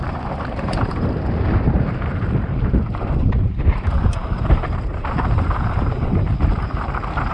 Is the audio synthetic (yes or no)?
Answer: yes